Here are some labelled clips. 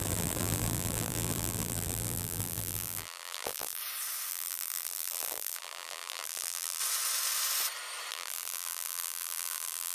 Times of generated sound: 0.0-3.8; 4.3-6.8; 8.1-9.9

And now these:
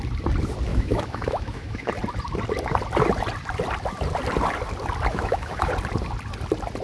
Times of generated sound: 0.7-1.9; 5.1-5.7